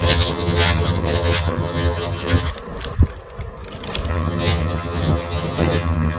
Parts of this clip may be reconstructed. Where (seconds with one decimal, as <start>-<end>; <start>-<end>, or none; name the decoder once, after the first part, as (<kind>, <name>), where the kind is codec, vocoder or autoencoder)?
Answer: 0.0-2.5 (vocoder, HiFi-GAN); 4.1-6.2